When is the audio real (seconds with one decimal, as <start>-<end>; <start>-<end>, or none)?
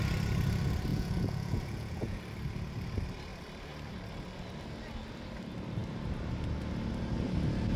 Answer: 0.0-0.9; 2.2-7.8